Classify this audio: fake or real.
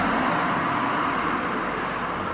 real